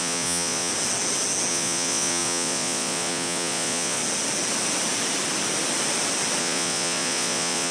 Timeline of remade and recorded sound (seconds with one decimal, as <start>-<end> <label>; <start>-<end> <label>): 0.0-0.7 remade; 0.7-1.5 recorded; 1.5-4.0 remade; 4.0-6.4 recorded; 6.4-7.7 remade